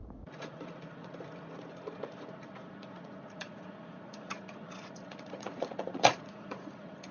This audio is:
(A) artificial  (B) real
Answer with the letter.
A